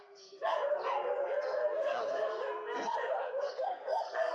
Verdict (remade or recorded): remade